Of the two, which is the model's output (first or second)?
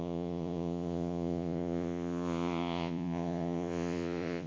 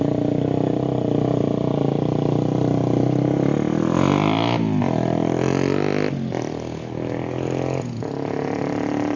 first